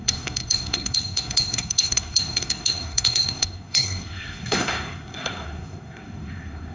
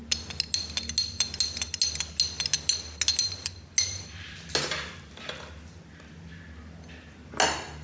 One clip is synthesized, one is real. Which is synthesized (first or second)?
first